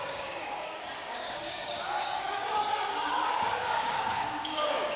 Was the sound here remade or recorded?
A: remade